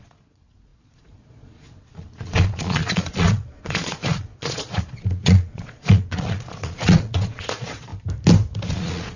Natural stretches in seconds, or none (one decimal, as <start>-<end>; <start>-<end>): 7.9-8.7